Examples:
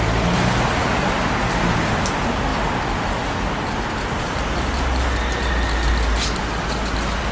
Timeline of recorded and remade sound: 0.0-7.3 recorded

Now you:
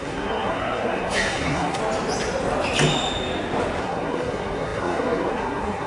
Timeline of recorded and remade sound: 0.0-1.8 remade; 1.8-3.8 recorded; 3.8-5.9 remade

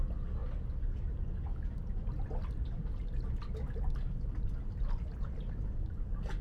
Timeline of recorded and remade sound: 0.0-6.4 recorded

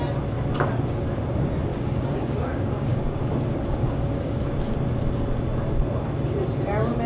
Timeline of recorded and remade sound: 0.0-1.7 recorded; 1.7-3.3 remade; 3.3-3.8 recorded; 3.8-4.4 remade; 4.4-7.1 recorded

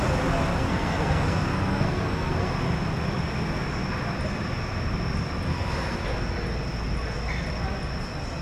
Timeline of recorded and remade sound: 0.0-0.5 recorded; 0.5-2.5 remade; 2.5-5.5 recorded; 5.5-6.0 remade; 6.0-8.4 recorded

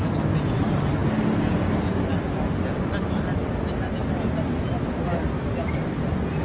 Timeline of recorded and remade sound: 0.0-6.4 recorded